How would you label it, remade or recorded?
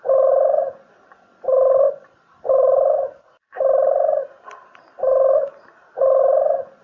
recorded